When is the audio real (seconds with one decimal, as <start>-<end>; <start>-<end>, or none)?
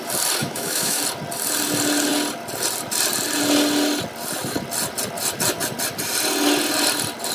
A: 0.0-0.4; 1.0-7.3